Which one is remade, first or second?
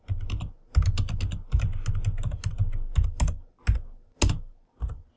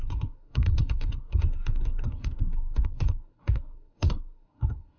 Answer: second